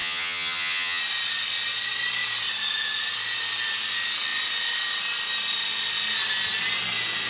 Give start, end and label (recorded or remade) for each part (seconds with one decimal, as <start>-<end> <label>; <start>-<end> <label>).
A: 0.0-1.0 remade; 1.0-7.3 recorded